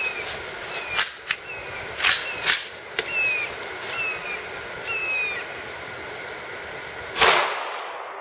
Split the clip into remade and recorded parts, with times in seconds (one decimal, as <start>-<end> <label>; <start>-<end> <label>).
0.0-8.2 recorded